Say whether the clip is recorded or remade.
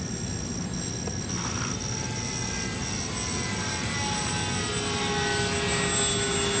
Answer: recorded